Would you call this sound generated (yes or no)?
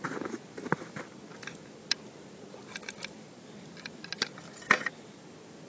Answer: no